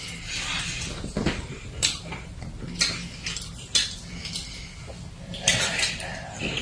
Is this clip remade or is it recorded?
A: remade